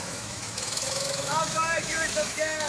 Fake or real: fake